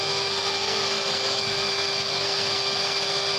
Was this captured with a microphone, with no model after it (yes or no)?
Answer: no